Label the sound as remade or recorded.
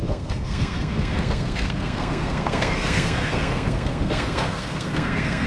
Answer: remade